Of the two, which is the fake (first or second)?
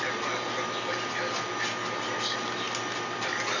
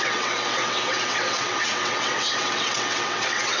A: second